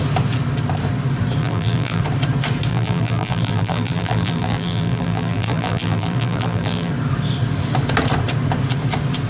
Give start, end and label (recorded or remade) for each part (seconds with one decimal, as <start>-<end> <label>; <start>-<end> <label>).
0.0-1.4 recorded; 1.4-2.0 remade; 2.0-2.7 recorded; 2.7-6.9 remade; 6.9-9.3 recorded